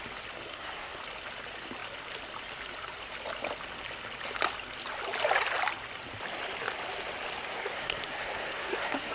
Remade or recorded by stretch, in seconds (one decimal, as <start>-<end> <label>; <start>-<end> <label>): 0.0-0.5 recorded; 0.5-1.0 remade; 1.0-7.5 recorded; 7.5-9.1 remade